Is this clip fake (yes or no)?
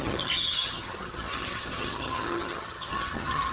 yes